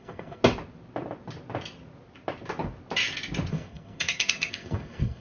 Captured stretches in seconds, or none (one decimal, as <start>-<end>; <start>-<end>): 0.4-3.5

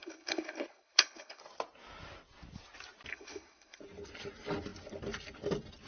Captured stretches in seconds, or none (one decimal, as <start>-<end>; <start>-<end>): 1.4-3.1; 3.8-5.9

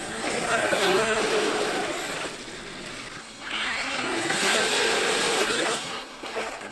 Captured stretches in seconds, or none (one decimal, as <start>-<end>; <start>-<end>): 1.2-3.2; 4.6-5.4